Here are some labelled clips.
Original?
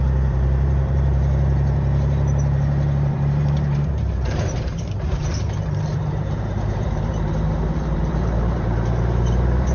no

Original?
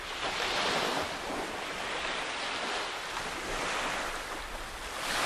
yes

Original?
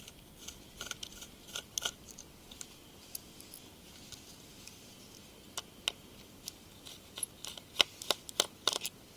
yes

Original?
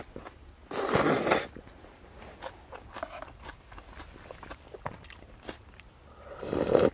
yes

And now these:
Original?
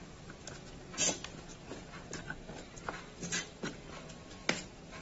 yes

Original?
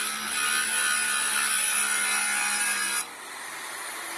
yes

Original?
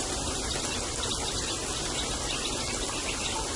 yes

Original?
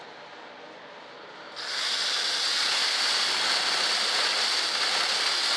yes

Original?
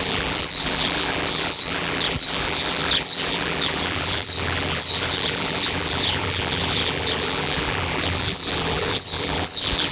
no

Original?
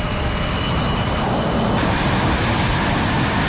no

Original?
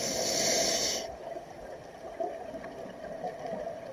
yes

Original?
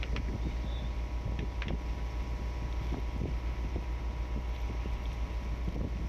yes